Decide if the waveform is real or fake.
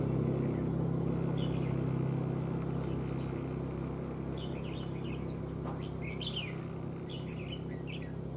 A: real